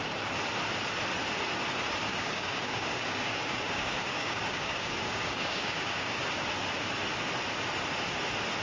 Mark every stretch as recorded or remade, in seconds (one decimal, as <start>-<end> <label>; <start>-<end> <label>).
0.0-2.1 recorded; 2.1-6.2 remade; 6.2-8.6 recorded